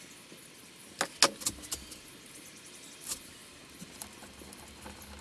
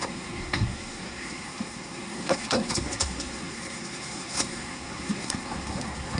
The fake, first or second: second